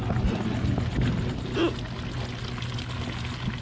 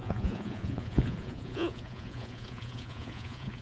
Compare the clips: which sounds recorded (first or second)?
first